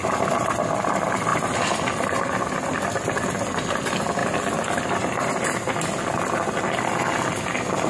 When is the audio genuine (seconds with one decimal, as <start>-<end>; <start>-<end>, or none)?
0.0-7.9